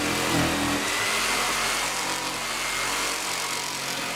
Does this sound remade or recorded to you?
recorded